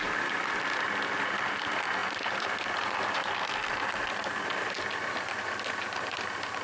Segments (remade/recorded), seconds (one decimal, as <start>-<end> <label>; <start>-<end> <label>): 0.0-6.6 recorded

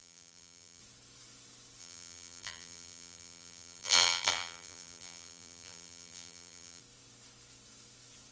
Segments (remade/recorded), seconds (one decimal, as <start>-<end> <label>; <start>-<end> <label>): 0.0-0.8 remade; 0.8-1.8 recorded; 1.8-6.8 remade; 6.8-8.3 recorded

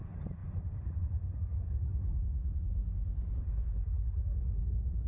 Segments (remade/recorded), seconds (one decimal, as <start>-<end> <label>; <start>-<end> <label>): 0.0-5.1 recorded

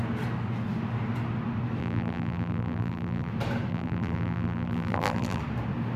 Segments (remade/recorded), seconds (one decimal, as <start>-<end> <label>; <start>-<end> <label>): 0.0-1.8 recorded; 1.8-3.3 remade; 3.3-3.7 recorded; 3.7-5.4 remade; 5.4-6.0 recorded

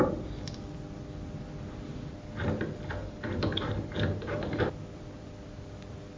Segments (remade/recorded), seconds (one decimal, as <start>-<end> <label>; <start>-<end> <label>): 0.0-3.0 recorded; 3.0-4.6 remade; 4.6-6.2 recorded

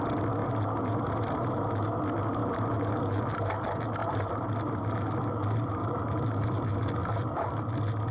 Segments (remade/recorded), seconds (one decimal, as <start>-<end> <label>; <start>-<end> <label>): 0.0-0.4 recorded; 0.4-1.1 remade; 1.1-2.4 recorded; 2.4-3.2 remade; 3.2-4.0 recorded; 4.0-4.5 remade; 4.5-8.1 recorded